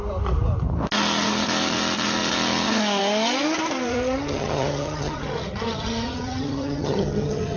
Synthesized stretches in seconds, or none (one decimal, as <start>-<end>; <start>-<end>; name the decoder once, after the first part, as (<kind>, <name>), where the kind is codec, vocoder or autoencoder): 3.9-7.6 (vocoder, HiFi-GAN)